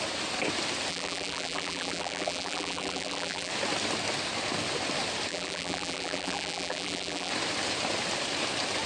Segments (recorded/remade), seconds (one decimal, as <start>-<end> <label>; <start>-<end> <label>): 0.0-0.9 recorded; 0.9-3.5 remade; 3.5-5.3 recorded; 5.3-7.3 remade; 7.3-8.9 recorded